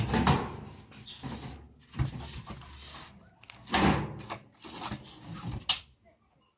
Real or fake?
real